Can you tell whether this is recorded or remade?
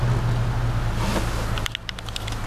recorded